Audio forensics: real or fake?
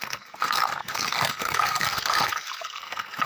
fake